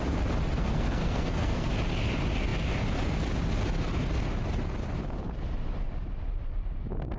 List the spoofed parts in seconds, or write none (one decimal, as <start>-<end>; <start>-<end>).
0.6-1.7